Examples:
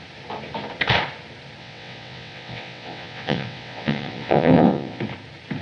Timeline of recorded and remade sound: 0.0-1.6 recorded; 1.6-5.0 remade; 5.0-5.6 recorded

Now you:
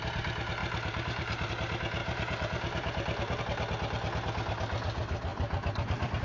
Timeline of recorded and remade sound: 0.0-0.6 recorded; 0.6-1.5 remade; 1.5-2.0 recorded; 2.0-3.4 remade; 3.4-5.3 recorded; 5.3-6.2 remade

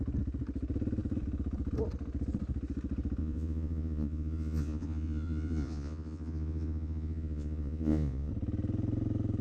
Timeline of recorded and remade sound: 0.0-3.2 recorded; 3.2-8.3 remade; 8.3-9.4 recorded

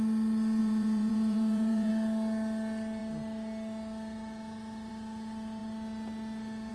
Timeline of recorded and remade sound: 0.0-0.6 recorded; 0.6-1.9 remade; 1.9-6.7 recorded